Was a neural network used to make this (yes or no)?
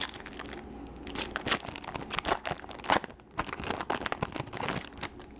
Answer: no